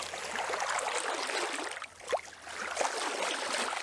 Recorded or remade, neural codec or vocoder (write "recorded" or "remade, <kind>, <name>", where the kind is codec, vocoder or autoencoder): recorded